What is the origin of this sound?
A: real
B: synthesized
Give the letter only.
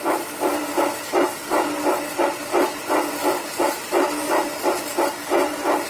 A